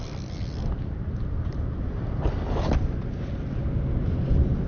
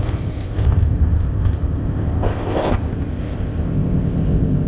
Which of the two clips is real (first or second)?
first